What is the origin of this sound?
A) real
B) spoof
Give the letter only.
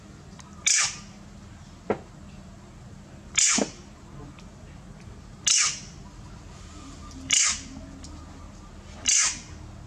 A